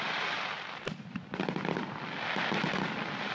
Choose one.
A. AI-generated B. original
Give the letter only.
B